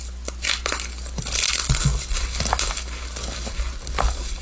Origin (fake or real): real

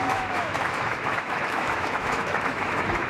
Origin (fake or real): fake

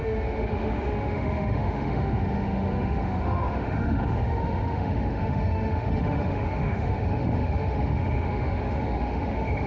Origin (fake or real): fake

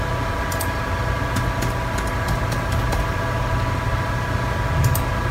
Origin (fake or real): real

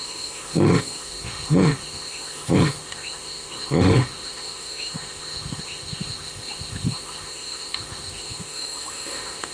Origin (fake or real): fake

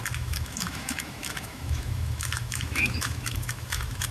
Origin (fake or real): fake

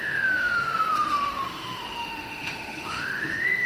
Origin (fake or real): fake